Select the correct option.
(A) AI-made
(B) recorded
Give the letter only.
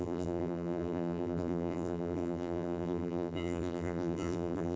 A